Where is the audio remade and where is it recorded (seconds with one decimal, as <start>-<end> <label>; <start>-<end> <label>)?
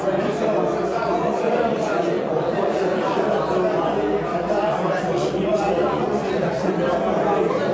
0.0-0.9 recorded; 0.9-3.3 remade; 3.3-4.3 recorded; 4.3-6.7 remade; 6.7-7.7 recorded